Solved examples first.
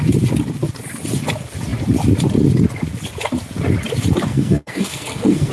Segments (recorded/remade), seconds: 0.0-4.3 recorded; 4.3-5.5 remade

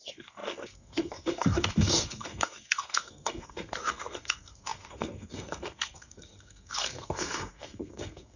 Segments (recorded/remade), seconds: 0.0-8.4 remade

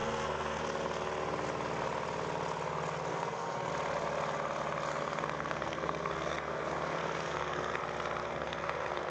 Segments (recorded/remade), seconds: 0.0-0.6 remade; 0.6-3.1 recorded; 3.1-3.7 remade; 3.7-4.9 recorded; 4.9-7.8 remade; 7.8-8.2 recorded; 8.2-9.1 remade

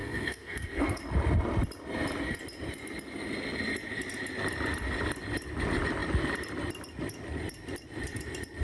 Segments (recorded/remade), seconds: 0.0-1.0 remade; 1.0-8.6 recorded

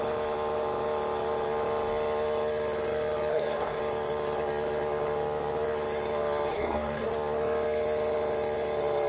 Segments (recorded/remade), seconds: 0.0-3.3 recorded; 3.3-3.8 remade; 3.8-6.5 recorded; 6.5-7.1 remade; 7.1-9.1 recorded

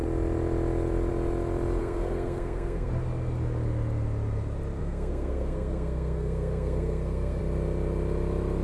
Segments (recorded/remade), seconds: 0.0-1.8 recorded; 1.8-2.9 remade; 2.9-4.8 recorded; 4.8-7.4 remade; 7.4-8.6 recorded